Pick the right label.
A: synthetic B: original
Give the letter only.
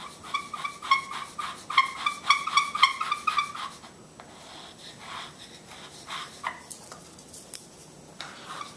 B